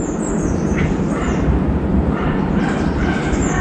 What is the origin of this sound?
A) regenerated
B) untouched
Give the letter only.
A